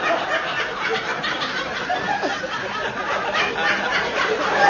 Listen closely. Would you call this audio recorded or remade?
recorded